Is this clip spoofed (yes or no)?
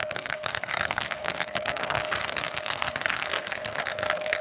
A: yes